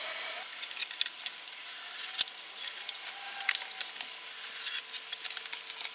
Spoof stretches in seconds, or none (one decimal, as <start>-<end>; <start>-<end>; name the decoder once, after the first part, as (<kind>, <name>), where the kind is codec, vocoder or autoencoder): none